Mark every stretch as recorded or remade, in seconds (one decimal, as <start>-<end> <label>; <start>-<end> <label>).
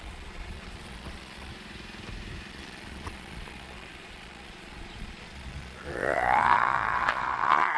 0.0-1.5 remade; 1.5-2.5 recorded; 2.5-7.8 remade